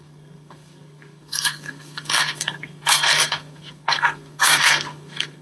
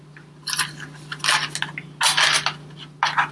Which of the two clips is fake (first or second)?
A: first